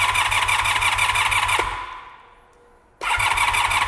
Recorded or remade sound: recorded